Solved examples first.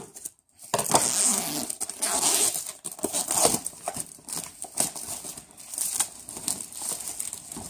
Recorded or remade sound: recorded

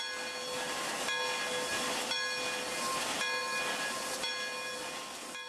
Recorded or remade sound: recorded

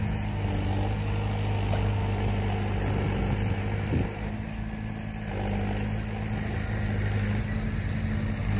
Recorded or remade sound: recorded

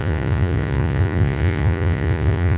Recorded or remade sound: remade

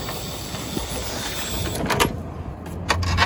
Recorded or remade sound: recorded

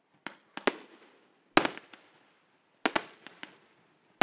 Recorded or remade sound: recorded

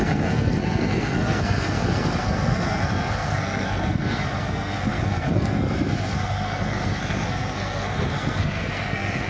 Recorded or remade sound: remade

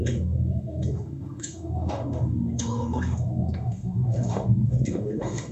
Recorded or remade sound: remade